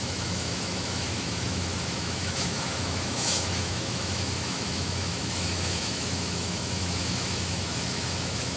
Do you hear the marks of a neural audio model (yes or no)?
yes